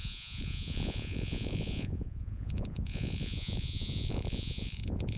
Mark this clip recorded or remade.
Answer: remade